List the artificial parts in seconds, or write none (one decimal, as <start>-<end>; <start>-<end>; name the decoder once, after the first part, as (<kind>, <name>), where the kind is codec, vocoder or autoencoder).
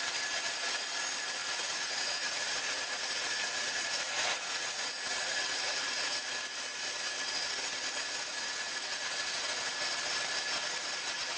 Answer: 1.4-6.3 (vocoder, Vocos); 8.3-9.7